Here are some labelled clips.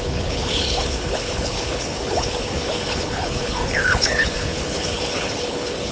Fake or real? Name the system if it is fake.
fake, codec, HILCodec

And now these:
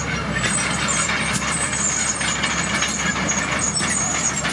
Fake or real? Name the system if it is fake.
real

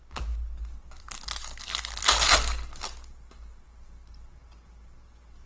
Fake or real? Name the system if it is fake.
real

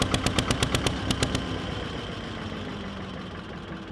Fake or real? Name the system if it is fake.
real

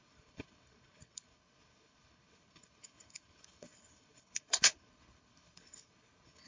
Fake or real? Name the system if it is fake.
fake, codec, HILCodec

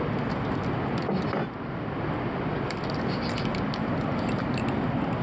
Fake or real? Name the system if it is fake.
real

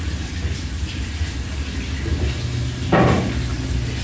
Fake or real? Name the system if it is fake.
real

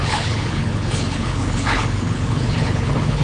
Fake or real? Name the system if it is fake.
fake, codec, HILCodec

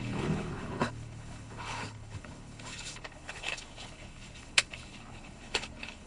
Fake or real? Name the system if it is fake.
fake, codec, HILCodec